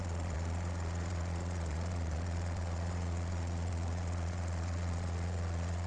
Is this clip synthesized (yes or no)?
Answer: yes